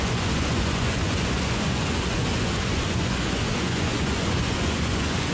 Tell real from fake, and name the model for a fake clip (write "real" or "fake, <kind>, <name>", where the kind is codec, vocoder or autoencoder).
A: fake, vocoder, Vocos